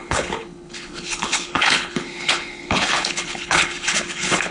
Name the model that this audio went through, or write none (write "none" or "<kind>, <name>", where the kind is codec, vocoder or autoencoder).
codec, HILCodec